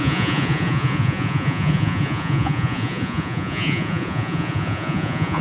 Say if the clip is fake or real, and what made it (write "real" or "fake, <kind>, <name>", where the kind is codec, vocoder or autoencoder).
fake, vocoder, Vocos